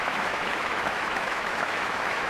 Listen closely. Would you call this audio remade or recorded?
remade